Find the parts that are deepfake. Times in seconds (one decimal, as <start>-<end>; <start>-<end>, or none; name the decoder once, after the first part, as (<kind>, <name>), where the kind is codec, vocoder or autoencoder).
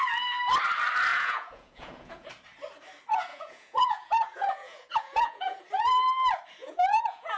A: 1.1-2.3 (vocoder, Vocos); 3.3-5.6; 6.6-7.4